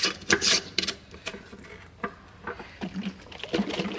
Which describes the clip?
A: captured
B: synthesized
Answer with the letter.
A